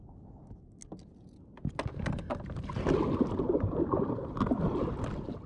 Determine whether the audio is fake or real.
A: real